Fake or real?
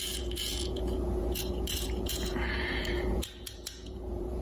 fake